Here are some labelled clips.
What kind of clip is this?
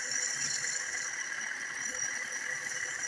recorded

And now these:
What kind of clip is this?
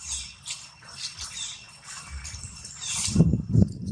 recorded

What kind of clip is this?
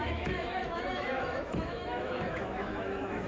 remade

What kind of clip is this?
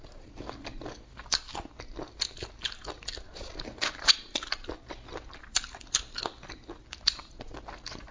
recorded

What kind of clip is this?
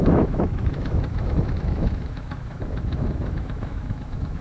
remade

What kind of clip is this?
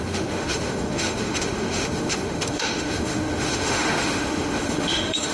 remade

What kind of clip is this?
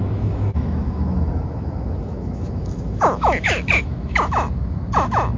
remade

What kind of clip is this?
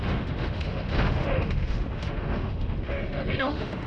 remade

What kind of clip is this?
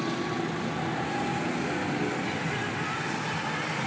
recorded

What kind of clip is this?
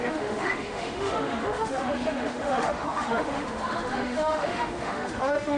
remade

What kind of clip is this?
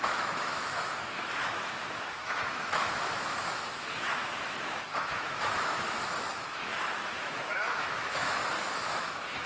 remade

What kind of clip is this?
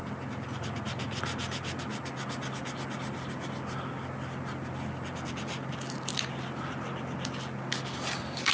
recorded